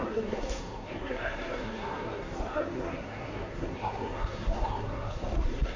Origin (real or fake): fake